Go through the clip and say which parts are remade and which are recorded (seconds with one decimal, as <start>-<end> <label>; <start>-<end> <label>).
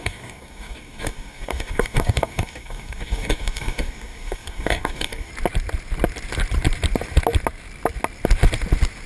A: 0.0-5.3 remade; 5.3-9.1 recorded